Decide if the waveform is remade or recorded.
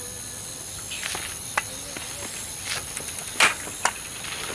recorded